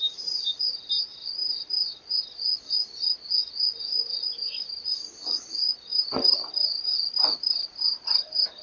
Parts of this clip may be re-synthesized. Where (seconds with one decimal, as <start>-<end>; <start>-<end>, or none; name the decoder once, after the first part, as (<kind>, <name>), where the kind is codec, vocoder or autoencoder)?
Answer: none